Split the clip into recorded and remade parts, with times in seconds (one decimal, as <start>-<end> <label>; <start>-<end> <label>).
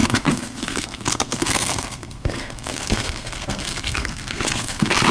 0.0-5.1 remade